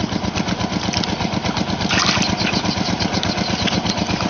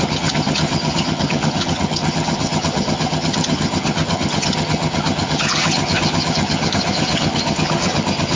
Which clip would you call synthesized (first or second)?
second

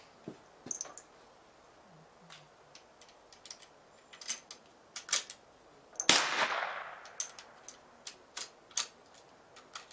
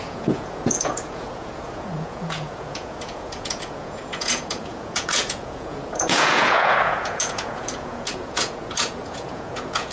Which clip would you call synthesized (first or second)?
second